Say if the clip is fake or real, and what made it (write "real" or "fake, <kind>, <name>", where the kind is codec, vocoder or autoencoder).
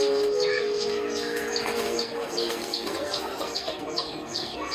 fake, codec, SNAC